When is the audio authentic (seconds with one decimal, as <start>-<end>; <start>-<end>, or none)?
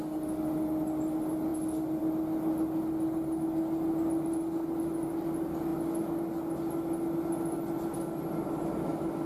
0.0-9.3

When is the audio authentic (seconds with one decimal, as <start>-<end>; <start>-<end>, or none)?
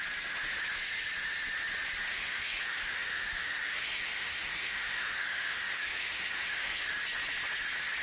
0.0-2.1; 6.9-8.0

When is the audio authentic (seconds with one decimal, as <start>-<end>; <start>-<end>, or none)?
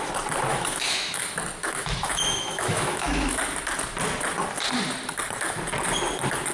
0.0-0.5; 1.2-1.6; 3.4-6.5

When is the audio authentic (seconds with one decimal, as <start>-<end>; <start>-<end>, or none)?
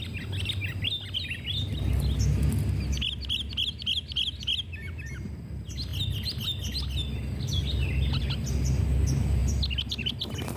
0.0-10.6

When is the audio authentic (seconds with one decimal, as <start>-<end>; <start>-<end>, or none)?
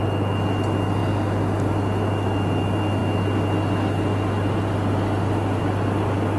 0.0-6.4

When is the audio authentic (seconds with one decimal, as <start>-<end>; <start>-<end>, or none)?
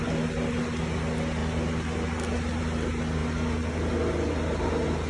0.0-5.1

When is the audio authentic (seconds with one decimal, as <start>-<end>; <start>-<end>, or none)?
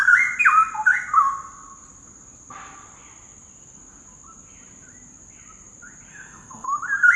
0.0-6.1; 6.8-7.2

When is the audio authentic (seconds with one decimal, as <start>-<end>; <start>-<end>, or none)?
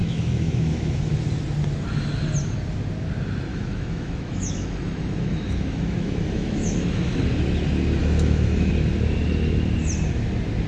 1.1-3.5; 7.2-8.0; 8.7-10.7